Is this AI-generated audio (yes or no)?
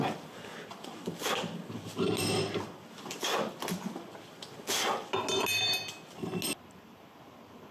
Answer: no